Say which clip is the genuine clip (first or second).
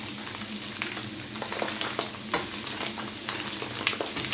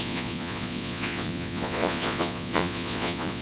first